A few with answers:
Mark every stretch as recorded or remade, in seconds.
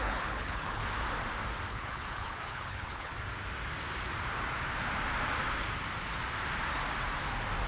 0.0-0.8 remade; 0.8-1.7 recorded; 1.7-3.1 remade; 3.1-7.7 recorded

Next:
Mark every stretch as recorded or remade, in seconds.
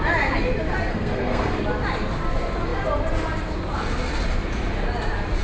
0.0-0.9 recorded; 0.9-1.6 remade; 1.6-5.4 recorded